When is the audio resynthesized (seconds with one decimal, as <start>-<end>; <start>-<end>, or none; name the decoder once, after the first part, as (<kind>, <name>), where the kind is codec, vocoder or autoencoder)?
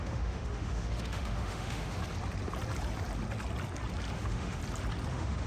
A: 0.0-2.0 (autoencoder, DAC-VAE); 4.1-4.6; 5.1-5.5